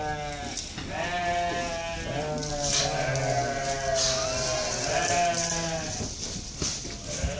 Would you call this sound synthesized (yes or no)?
no